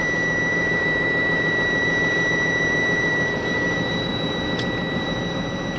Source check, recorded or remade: remade